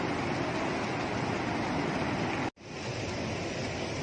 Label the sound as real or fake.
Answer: real